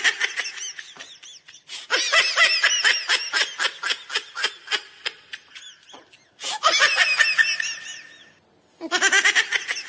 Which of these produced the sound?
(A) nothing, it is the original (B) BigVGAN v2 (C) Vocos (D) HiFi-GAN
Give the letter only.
A